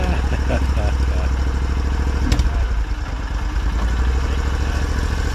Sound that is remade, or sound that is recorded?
recorded